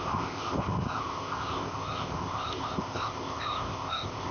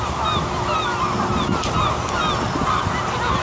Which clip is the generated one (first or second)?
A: first